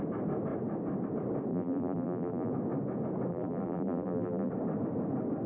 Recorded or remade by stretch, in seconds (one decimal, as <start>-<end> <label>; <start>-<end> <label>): 0.0-1.5 recorded; 1.5-2.5 remade; 2.5-3.3 recorded; 3.3-4.5 remade; 4.5-5.5 recorded